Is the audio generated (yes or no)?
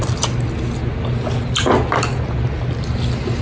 no